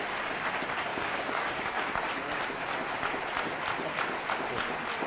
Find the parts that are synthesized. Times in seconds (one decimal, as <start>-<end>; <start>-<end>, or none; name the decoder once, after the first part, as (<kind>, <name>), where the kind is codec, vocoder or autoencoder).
0.9-1.9 (codec, DAC)